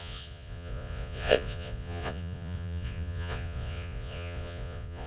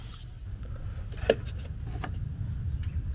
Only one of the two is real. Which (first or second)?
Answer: second